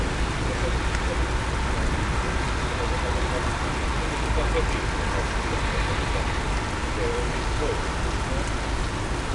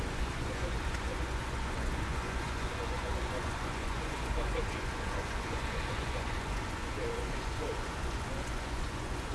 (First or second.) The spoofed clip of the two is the second